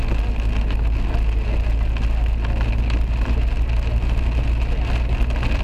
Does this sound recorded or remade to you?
recorded